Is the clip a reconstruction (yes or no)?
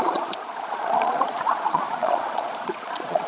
yes